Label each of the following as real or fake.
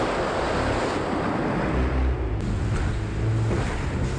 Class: real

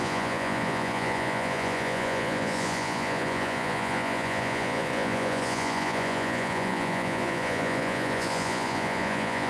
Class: fake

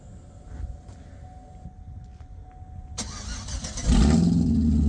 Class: real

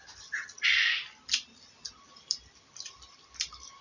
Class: real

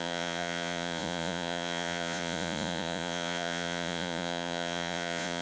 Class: fake